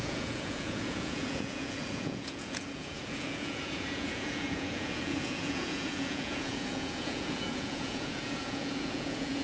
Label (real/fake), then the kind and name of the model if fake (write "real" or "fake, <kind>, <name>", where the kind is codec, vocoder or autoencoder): fake, vocoder, Vocos